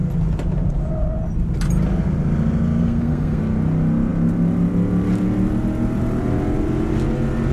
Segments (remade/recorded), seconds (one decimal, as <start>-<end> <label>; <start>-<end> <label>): 0.0-2.8 recorded; 2.8-3.4 remade; 3.4-7.5 recorded

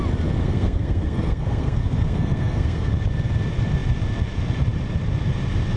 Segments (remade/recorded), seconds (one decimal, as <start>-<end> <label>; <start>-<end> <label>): 0.0-0.4 recorded; 0.4-2.9 remade; 2.9-5.8 recorded

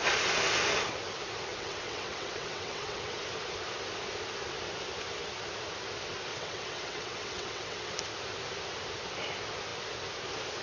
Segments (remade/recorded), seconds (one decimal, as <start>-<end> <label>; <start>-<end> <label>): 0.0-1.5 recorded; 1.5-3.2 remade; 3.2-6.3 recorded; 6.3-7.9 remade; 7.9-10.6 recorded

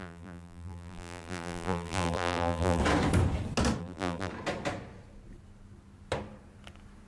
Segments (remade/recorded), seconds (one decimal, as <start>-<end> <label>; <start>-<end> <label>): 0.0-2.8 remade; 2.8-3.8 recorded; 3.8-4.3 remade; 4.3-7.1 recorded

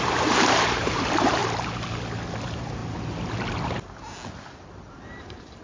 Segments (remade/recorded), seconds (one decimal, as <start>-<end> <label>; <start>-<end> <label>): 0.0-1.4 remade; 1.4-2.4 recorded; 2.4-2.8 remade; 2.8-4.9 recorded; 4.9-5.6 remade

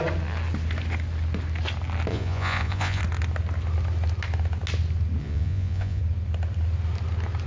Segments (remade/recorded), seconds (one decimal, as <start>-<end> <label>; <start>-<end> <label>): 0.0-2.1 recorded; 2.1-3.0 remade; 3.0-5.2 recorded; 5.2-6.0 remade; 6.0-7.5 recorded

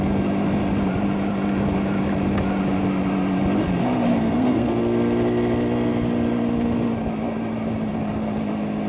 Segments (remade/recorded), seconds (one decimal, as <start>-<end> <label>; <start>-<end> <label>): 0.0-4.1 recorded; 4.1-4.8 remade; 4.8-8.9 recorded